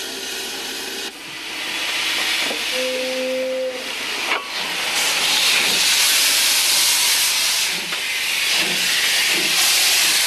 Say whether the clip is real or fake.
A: real